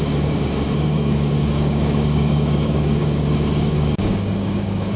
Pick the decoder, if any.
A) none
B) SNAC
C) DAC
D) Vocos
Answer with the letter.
C